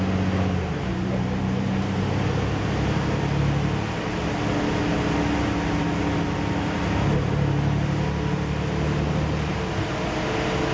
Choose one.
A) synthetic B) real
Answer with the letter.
B